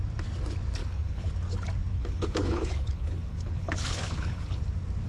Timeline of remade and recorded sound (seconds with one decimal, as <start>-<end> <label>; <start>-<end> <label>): 0.0-0.8 recorded; 0.8-1.3 remade; 1.3-1.9 recorded; 1.9-4.6 remade; 4.6-5.1 recorded